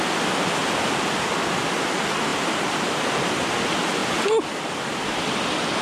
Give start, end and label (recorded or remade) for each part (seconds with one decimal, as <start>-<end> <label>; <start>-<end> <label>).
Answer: 0.0-5.8 recorded